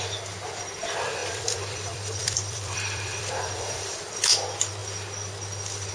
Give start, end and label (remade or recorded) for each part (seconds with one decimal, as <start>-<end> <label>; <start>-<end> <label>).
0.0-1.2 recorded; 1.2-4.1 remade; 4.1-5.9 recorded